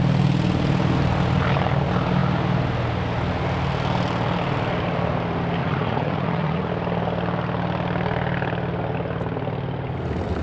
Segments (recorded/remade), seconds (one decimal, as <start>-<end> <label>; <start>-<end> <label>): 0.0-5.6 recorded; 5.6-6.7 remade; 6.7-10.4 recorded